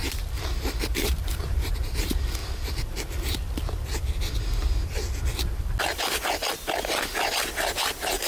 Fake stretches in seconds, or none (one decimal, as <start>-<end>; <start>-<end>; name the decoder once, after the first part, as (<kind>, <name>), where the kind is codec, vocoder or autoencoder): 0.0-2.4 (vocoder, BigVGAN v2); 7.3-8.3